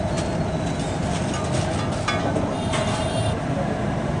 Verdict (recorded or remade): recorded